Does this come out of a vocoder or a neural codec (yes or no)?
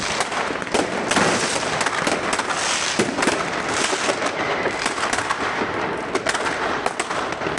no